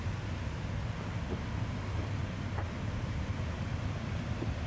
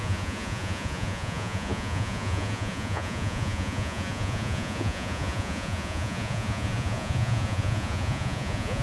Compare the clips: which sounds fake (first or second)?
second